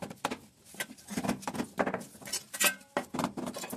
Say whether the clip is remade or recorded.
recorded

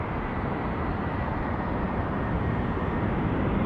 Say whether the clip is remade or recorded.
remade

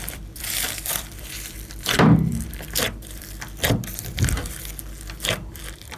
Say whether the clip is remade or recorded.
remade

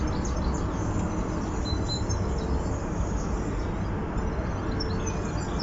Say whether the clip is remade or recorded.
recorded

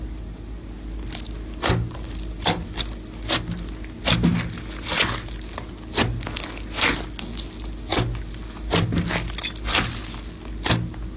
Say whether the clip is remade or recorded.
recorded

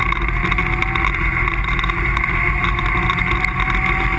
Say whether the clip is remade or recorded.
recorded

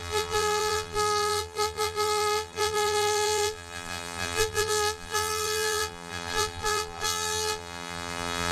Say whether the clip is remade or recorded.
remade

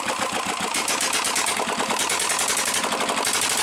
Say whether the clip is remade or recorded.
recorded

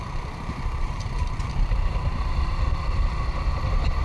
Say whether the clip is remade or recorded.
remade